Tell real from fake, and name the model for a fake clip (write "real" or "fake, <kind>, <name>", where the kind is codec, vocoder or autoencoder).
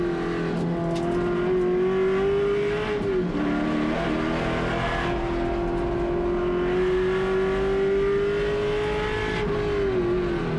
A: real